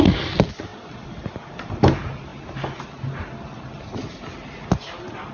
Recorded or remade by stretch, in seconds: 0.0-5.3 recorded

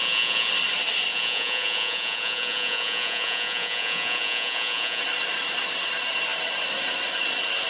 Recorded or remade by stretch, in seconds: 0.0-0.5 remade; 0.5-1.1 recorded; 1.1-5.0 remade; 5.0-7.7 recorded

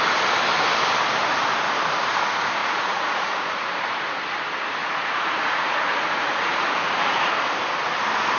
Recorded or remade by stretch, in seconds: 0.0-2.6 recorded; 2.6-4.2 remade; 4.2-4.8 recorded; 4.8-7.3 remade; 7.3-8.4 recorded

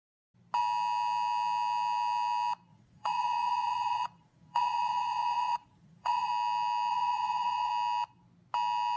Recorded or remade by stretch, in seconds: 0.0-2.7 recorded; 2.7-6.3 remade; 6.3-6.9 recorded; 6.9-7.7 remade; 7.7-9.0 recorded